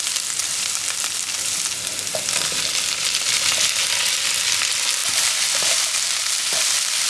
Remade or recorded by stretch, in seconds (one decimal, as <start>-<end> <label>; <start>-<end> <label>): 0.0-7.1 recorded

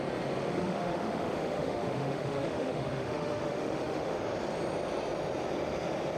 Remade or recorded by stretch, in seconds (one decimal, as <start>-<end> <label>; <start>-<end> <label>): 0.0-0.5 recorded; 0.5-4.2 remade; 4.2-6.2 recorded

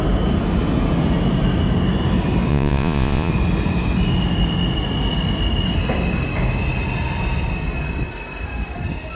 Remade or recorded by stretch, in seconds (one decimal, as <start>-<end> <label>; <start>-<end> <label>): 0.0-2.5 recorded; 2.5-3.3 remade; 3.3-9.2 recorded